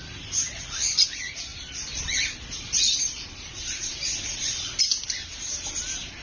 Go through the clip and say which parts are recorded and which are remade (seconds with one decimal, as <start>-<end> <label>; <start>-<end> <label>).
0.0-1.5 recorded; 1.5-4.8 remade; 4.8-6.2 recorded